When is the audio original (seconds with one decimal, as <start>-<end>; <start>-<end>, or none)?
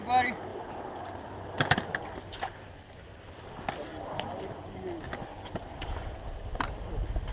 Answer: 0.0-7.3